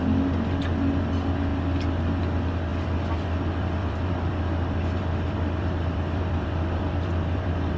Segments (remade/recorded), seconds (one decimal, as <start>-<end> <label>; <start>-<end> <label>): 0.0-2.7 recorded; 2.7-7.8 remade